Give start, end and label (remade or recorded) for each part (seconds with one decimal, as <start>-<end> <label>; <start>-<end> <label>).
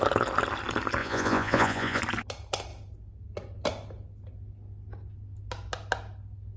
0.0-1.0 recorded; 1.0-2.0 remade; 2.0-6.6 recorded